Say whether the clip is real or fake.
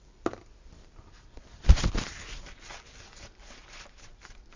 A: real